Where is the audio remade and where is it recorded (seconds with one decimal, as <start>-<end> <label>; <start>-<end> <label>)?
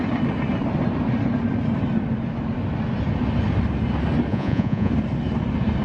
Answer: 0.0-4.3 recorded; 4.3-4.9 remade; 4.9-5.8 recorded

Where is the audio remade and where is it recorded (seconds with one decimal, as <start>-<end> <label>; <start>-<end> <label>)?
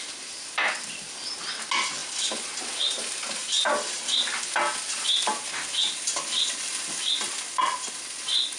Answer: 0.0-8.6 recorded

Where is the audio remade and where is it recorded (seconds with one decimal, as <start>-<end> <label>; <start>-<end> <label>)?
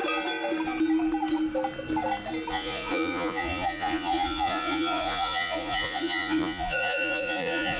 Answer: 0.0-2.5 recorded; 2.5-7.8 remade